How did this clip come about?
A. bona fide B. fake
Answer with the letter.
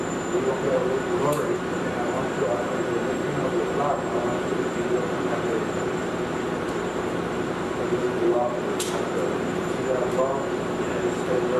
B